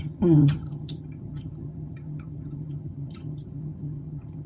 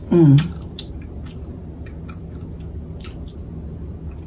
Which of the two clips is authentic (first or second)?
second